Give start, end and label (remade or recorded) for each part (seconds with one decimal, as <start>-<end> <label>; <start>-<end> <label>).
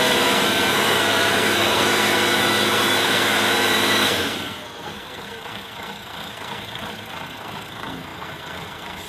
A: 0.0-9.1 remade